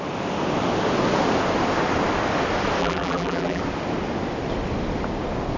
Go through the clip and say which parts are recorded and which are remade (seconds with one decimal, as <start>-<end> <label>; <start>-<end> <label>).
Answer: 0.0-2.8 recorded; 2.8-3.6 remade; 3.6-5.6 recorded